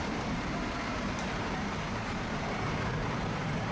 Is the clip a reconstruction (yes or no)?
yes